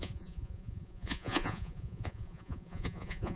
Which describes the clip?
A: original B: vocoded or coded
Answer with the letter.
B